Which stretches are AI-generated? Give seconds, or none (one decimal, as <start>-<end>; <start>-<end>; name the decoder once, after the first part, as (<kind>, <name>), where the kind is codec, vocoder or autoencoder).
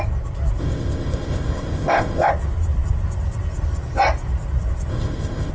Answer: 0.6-2.3 (codec, ZipCodec); 4.9-5.5